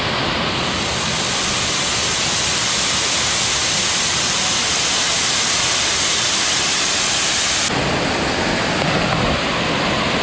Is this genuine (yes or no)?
yes